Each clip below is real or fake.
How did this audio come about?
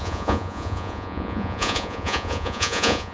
fake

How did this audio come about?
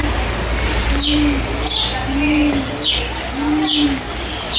real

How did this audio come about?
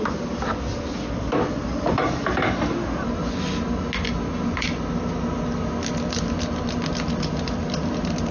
real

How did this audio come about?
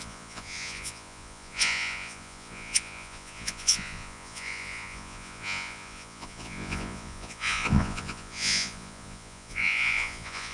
fake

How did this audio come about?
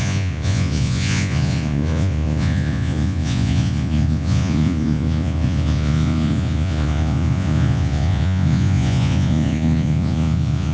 fake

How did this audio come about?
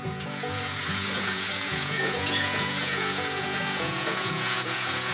fake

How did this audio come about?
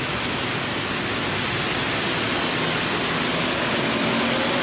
real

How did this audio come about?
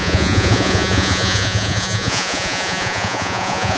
fake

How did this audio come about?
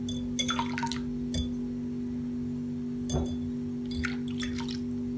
real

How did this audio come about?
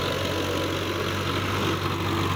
real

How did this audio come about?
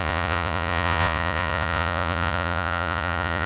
fake